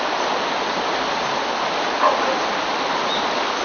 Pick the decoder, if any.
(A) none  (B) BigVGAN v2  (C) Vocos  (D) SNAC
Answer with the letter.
A